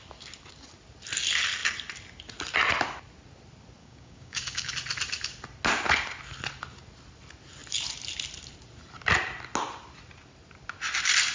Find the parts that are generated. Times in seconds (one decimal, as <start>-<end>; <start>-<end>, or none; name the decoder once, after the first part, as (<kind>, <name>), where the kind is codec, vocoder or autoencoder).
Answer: 3.8-4.7 (codec, DAC)